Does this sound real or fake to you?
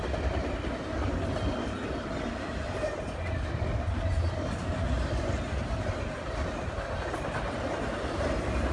real